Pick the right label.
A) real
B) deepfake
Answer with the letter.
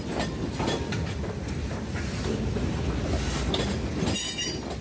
A